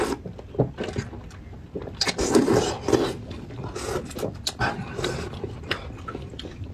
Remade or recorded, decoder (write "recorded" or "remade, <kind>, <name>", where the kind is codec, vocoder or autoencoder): recorded